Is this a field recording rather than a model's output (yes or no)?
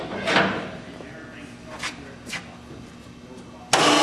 yes